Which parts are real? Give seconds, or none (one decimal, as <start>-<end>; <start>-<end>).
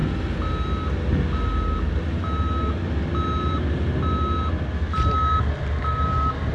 0.0-6.5